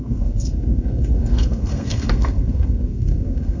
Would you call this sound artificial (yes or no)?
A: yes